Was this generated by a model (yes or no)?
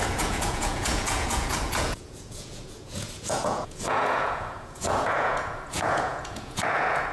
yes